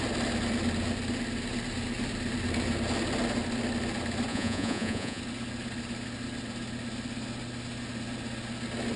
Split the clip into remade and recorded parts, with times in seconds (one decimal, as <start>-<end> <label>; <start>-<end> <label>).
0.0-4.3 recorded; 4.3-5.2 remade; 5.2-9.0 recorded